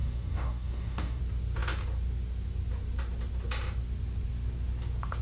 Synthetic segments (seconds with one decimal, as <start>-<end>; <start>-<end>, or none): 0.0-1.2